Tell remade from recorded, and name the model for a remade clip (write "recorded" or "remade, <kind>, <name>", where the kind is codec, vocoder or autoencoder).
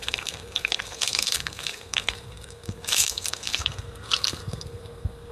remade, codec, SNAC